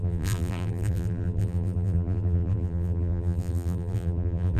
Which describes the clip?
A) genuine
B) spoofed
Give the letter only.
B